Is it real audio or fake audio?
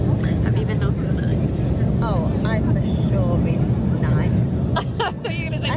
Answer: real